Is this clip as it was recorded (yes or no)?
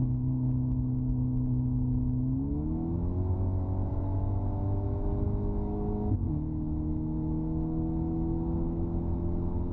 no